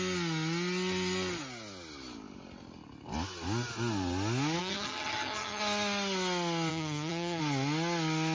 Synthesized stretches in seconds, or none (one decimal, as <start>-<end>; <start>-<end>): 4.6-5.6; 6.7-7.4